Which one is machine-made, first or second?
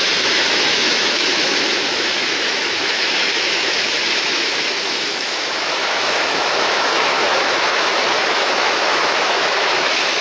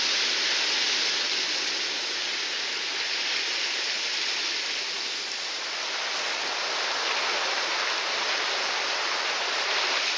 first